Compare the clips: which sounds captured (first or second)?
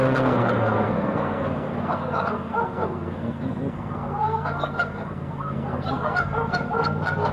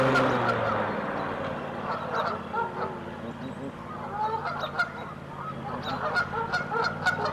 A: second